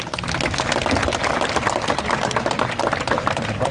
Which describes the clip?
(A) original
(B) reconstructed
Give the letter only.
A